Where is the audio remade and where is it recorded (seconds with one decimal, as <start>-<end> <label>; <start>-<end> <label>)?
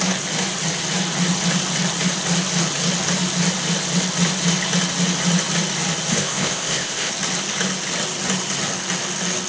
0.0-6.1 recorded; 6.1-7.1 remade; 7.1-9.5 recorded